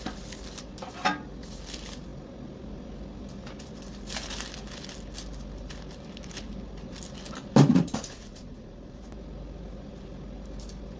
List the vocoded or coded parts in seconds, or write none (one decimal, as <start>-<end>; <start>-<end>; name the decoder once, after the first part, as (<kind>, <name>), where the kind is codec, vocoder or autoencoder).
7.7-9.0 (vocoder, Vocos)